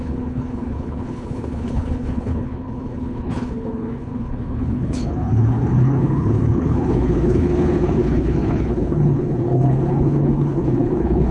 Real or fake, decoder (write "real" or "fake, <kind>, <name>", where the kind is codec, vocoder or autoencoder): fake, codec, HILCodec